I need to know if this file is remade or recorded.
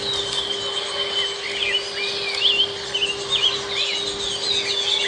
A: recorded